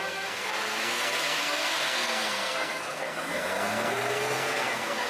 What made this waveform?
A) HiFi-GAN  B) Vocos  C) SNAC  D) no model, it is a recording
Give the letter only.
C